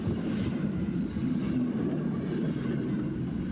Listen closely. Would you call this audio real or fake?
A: real